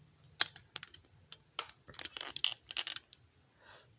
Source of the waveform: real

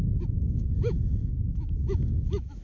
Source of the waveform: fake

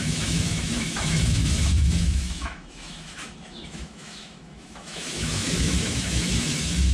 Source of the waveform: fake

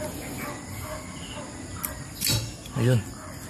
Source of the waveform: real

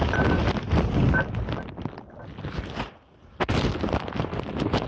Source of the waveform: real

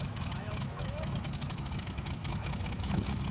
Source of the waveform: fake